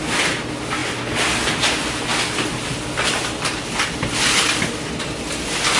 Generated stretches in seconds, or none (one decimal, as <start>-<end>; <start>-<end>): none